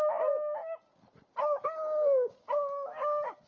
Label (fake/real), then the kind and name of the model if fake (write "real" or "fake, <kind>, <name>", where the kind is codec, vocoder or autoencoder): real